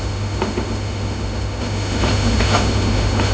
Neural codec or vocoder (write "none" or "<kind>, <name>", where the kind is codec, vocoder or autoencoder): autoencoder, DAC-VAE